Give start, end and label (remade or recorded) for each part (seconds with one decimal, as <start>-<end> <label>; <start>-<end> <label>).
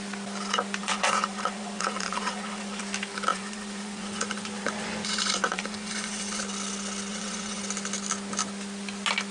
0.0-0.8 recorded; 0.8-2.8 remade; 2.8-3.3 recorded; 3.3-6.4 remade; 6.4-7.1 recorded; 7.1-7.6 remade; 7.6-9.3 recorded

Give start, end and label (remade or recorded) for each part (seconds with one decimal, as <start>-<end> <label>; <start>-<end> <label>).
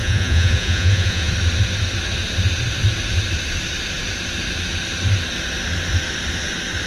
0.0-1.3 remade; 1.3-6.9 recorded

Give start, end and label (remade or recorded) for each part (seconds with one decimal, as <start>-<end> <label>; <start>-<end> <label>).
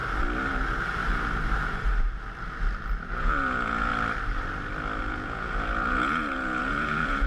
0.0-3.2 recorded; 3.2-3.9 remade; 3.9-5.0 recorded; 5.0-7.3 remade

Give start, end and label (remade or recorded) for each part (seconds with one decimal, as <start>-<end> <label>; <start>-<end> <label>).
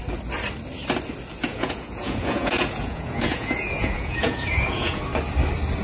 0.0-1.5 recorded; 1.5-5.0 remade; 5.0-5.8 recorded